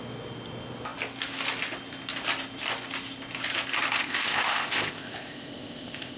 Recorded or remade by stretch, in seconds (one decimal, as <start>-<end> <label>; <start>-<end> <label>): 0.0-4.0 recorded; 4.0-6.2 remade